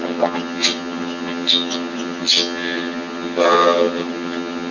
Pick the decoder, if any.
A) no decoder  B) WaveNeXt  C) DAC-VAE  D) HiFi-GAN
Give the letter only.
D